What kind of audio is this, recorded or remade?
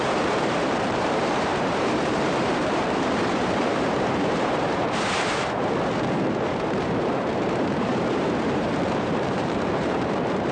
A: remade